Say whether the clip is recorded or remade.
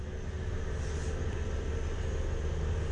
recorded